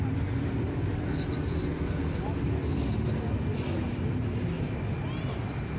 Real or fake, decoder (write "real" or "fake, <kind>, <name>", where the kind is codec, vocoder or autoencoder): real